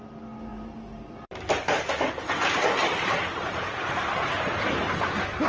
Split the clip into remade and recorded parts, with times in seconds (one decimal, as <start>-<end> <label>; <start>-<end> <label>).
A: 0.0-0.5 recorded; 0.5-1.4 remade; 1.4-2.8 recorded; 2.8-4.7 remade; 4.7-5.5 recorded